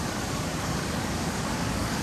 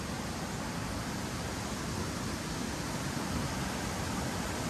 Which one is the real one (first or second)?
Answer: second